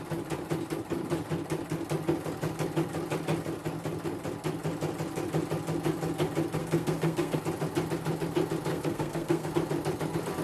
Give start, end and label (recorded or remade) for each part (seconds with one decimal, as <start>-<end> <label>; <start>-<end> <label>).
0.0-6.6 recorded; 6.6-7.4 remade; 7.4-8.7 recorded; 8.7-9.5 remade; 9.5-10.4 recorded